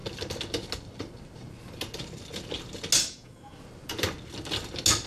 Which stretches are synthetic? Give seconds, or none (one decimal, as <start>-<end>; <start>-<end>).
3.0-3.6